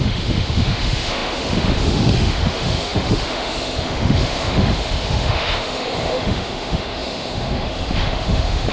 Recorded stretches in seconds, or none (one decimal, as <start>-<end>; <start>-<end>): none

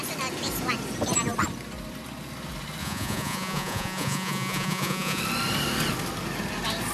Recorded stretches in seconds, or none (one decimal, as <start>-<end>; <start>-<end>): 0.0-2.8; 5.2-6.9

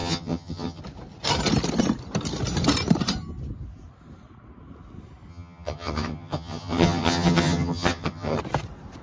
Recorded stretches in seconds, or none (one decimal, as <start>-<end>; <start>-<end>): 0.8-5.3; 8.4-9.0

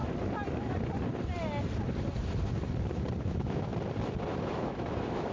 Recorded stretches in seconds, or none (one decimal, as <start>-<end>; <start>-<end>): 0.0-3.2; 3.7-4.5

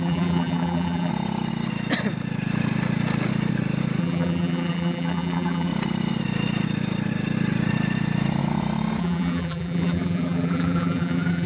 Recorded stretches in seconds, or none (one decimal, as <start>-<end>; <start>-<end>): 1.1-4.0; 5.7-9.0

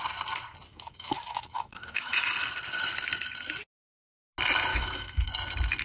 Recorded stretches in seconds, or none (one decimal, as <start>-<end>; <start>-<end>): 0.0-0.7; 2.1-4.7; 5.3-5.8